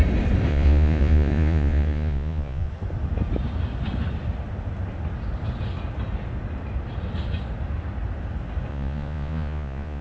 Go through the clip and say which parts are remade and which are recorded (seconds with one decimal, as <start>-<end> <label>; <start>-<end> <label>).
0.0-0.5 recorded; 0.5-2.7 remade; 2.7-8.7 recorded; 8.7-10.0 remade